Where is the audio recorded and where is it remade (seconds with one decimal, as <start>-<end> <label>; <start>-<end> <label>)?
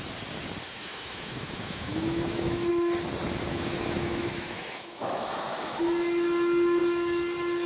0.0-0.7 recorded; 0.7-2.7 remade; 2.7-3.5 recorded; 3.5-5.8 remade; 5.8-7.7 recorded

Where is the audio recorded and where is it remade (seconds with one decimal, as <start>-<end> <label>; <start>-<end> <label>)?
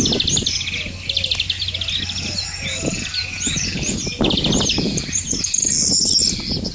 0.0-6.7 recorded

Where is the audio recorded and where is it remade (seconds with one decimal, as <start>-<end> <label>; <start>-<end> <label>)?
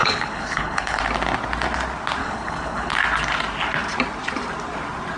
0.0-1.0 remade; 1.0-2.2 recorded; 2.2-2.9 remade; 2.9-5.2 recorded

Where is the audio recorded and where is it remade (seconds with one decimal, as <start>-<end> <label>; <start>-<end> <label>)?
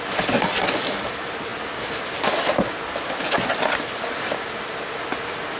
0.0-5.6 recorded